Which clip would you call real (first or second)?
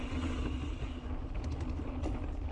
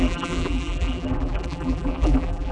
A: first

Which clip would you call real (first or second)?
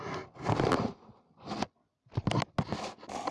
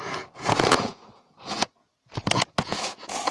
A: first